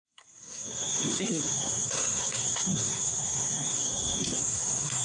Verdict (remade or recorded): remade